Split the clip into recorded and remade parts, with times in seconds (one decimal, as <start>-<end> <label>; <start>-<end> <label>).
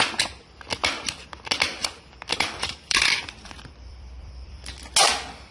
0.0-1.8 recorded; 1.8-4.7 remade; 4.7-5.5 recorded